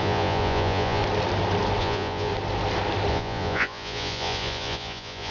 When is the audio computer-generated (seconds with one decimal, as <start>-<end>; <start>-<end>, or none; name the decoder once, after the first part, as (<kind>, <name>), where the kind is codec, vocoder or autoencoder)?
0.0-1.0 (vocoder, Vocos); 1.8-2.3; 3.1-5.3